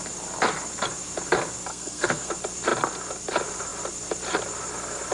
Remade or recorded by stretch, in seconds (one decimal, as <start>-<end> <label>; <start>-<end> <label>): 0.0-1.7 recorded; 1.7-2.3 remade; 2.3-5.1 recorded